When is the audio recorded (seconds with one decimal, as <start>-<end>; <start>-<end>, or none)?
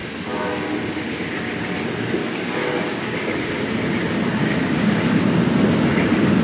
0.0-2.2; 3.5-4.3; 5.2-6.4